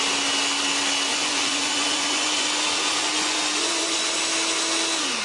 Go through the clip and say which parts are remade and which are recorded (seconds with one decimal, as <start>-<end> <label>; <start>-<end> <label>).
0.0-1.1 recorded; 1.1-4.2 remade; 4.2-5.2 recorded